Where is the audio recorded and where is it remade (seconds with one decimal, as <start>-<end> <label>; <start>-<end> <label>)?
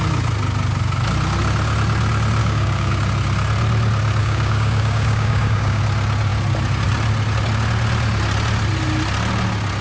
0.0-2.4 recorded; 2.4-2.9 remade; 2.9-4.2 recorded; 4.2-5.8 remade; 5.8-9.8 recorded